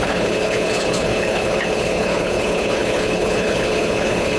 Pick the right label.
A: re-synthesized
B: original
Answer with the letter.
A